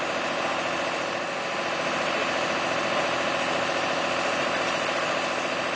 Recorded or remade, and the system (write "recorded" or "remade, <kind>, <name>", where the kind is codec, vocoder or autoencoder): recorded